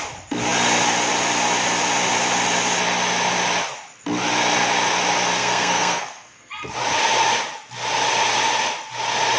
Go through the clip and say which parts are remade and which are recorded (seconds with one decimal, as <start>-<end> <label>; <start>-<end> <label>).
0.0-5.4 recorded; 5.4-6.5 remade; 6.5-9.4 recorded